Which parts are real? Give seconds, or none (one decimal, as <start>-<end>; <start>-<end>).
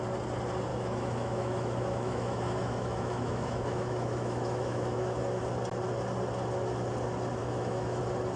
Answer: 0.0-0.7; 5.4-7.4; 8.0-8.4